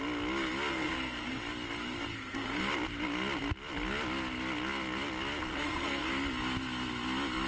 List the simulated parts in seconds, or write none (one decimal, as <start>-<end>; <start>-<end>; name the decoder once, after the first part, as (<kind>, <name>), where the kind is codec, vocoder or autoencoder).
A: 0.7-1.4 (codec, SNAC); 2.1-2.6; 5.5-6.1